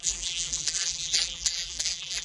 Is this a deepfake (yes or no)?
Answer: yes